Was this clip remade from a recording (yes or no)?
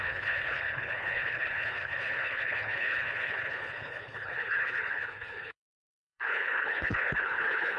yes